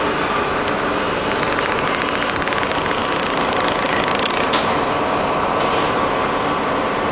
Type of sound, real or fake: real